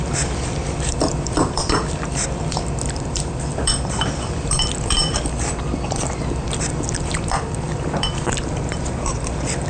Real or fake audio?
fake